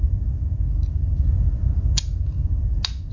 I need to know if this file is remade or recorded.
recorded